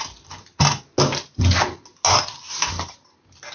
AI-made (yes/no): no